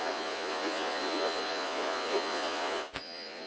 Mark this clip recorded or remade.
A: remade